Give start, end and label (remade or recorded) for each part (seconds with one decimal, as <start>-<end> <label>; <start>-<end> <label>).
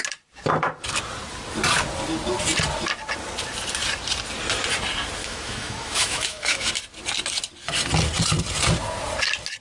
0.0-5.2 recorded; 5.2-6.7 remade; 6.7-9.6 recorded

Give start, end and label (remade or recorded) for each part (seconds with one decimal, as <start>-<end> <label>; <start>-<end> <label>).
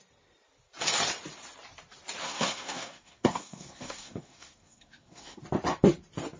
0.0-2.2 recorded; 2.2-5.4 remade; 5.4-6.4 recorded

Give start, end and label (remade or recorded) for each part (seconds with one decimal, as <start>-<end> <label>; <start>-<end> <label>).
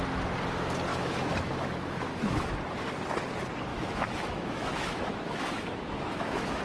0.0-0.9 recorded; 0.9-2.5 remade; 2.5-3.7 recorded; 3.7-6.6 remade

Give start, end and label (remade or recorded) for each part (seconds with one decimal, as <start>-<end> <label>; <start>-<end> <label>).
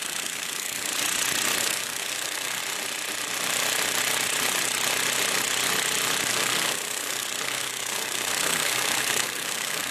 0.0-0.9 remade; 0.9-1.6 recorded; 1.6-2.6 remade; 2.6-6.3 recorded; 6.3-9.9 remade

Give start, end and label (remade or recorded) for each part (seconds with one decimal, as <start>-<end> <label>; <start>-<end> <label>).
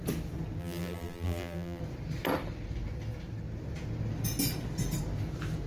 0.0-0.6 recorded; 0.6-1.8 remade; 1.8-5.7 recorded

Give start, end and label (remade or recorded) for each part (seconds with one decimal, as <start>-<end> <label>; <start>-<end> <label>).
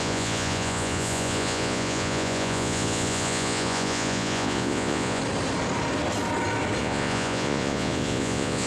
0.0-5.2 remade; 5.2-6.8 recorded; 6.8-8.7 remade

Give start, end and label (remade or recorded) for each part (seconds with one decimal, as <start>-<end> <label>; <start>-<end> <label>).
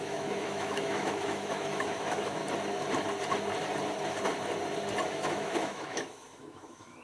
0.0-2.4 remade; 2.4-5.1 recorded; 5.1-7.0 remade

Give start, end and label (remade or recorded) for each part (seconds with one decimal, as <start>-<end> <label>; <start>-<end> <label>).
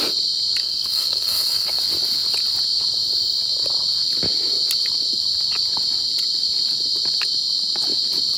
0.0-0.6 recorded; 0.6-1.8 remade; 1.8-8.4 recorded